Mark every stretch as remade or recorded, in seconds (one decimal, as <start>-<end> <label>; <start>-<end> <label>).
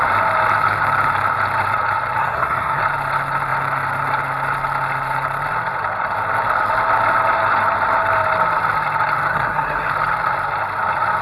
0.0-2.2 recorded; 2.2-2.8 remade; 2.8-9.3 recorded; 9.3-9.9 remade; 9.9-11.2 recorded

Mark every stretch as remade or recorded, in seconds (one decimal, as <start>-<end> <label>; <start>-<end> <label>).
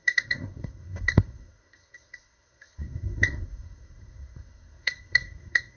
0.0-5.8 remade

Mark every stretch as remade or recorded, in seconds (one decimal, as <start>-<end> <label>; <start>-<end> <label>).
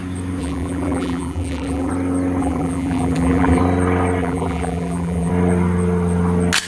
0.0-0.4 recorded; 0.4-1.9 remade; 1.9-2.4 recorded; 2.4-3.6 remade; 3.6-4.2 recorded; 4.2-5.3 remade; 5.3-6.7 recorded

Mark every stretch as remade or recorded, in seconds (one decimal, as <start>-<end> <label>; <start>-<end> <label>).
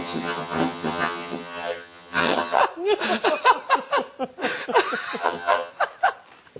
0.0-2.6 remade; 2.6-5.2 recorded; 5.2-5.7 remade; 5.7-6.6 recorded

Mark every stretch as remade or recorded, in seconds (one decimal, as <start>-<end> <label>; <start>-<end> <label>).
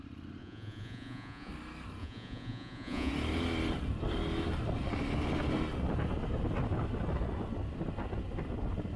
0.0-0.4 recorded; 0.4-1.5 remade; 1.5-2.0 recorded; 2.0-3.1 remade; 3.1-9.0 recorded